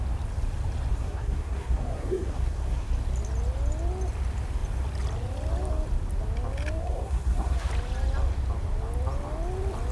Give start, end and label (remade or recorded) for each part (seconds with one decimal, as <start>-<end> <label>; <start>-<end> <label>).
0.0-0.9 recorded; 0.9-2.9 remade; 2.9-6.8 recorded; 6.8-7.7 remade; 7.7-9.9 recorded